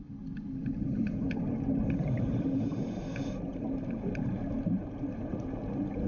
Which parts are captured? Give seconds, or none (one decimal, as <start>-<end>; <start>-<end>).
0.0-0.6; 2.8-3.5; 4.1-4.8; 5.6-6.1